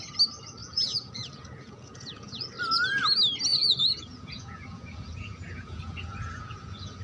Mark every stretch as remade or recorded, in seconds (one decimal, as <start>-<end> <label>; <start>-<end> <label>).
0.0-0.6 recorded; 0.6-2.5 remade; 2.5-3.5 recorded; 3.5-7.0 remade